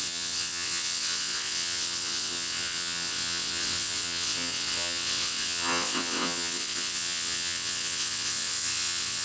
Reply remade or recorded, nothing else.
remade